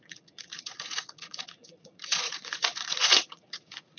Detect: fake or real fake